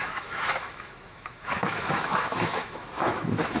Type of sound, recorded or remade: remade